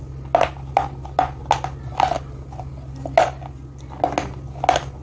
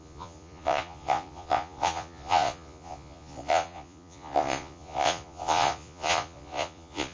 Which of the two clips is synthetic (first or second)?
second